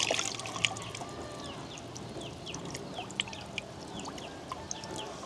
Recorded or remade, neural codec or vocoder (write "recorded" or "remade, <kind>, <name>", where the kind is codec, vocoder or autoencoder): recorded